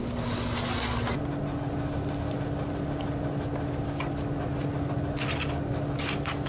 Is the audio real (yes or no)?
yes